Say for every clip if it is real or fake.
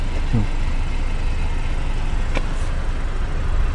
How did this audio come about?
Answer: real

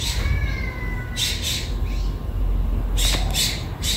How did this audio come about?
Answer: real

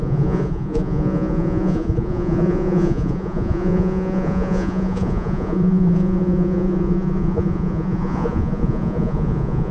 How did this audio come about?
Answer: fake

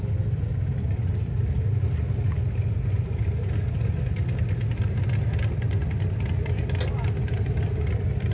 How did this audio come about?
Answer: real